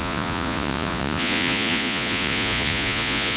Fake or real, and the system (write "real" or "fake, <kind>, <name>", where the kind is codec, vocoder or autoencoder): fake, vocoder, Vocos